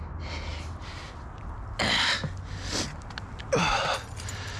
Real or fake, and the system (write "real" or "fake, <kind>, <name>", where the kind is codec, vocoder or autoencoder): real